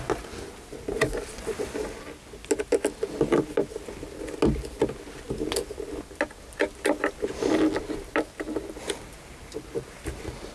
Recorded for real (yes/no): yes